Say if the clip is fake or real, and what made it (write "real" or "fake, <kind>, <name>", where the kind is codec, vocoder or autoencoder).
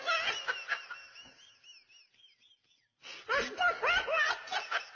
real